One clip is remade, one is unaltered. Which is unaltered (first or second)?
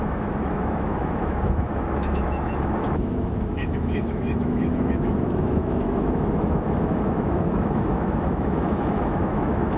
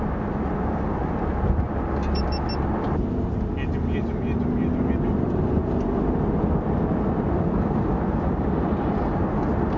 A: second